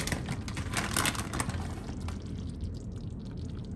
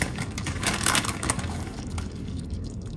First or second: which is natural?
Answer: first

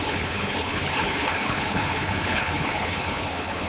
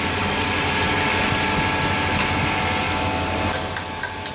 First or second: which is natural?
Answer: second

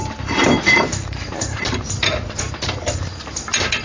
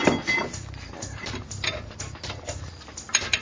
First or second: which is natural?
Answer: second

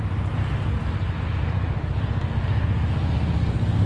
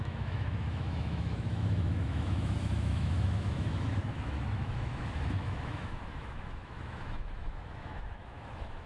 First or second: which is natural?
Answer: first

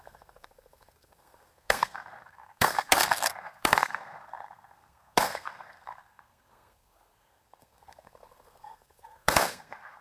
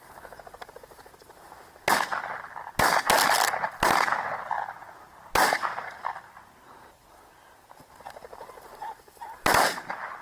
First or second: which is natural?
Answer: second